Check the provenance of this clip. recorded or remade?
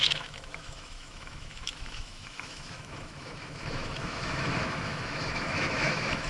remade